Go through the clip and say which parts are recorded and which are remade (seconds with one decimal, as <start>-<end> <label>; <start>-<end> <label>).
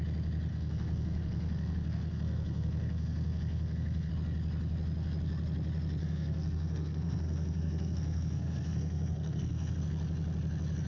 0.0-0.5 recorded; 0.5-4.1 remade; 4.1-6.0 recorded; 6.0-9.8 remade; 9.8-10.9 recorded